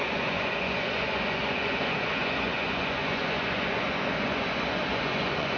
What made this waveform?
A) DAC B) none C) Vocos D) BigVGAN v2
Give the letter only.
C